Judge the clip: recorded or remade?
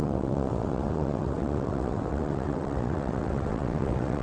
remade